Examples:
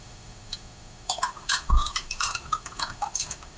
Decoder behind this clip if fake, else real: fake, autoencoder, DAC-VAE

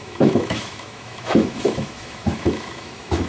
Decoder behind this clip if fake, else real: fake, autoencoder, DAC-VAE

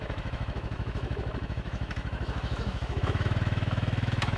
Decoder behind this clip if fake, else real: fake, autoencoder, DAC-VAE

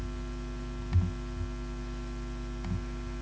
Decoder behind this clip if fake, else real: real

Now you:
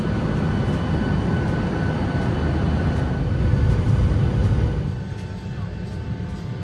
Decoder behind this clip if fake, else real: real